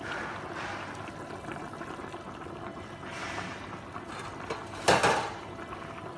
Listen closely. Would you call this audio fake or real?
real